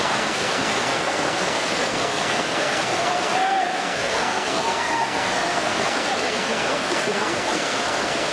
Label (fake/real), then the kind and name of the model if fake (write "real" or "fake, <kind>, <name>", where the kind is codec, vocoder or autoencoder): fake, codec, SNAC